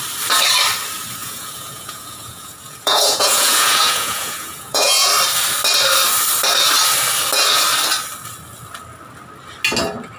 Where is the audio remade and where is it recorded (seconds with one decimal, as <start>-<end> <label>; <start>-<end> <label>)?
0.0-1.2 recorded; 1.2-5.1 remade; 5.1-10.2 recorded